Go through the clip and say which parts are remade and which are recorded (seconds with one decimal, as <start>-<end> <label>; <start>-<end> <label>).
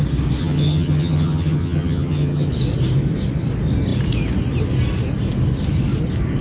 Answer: 0.0-0.4 recorded; 0.4-2.5 remade; 2.5-6.4 recorded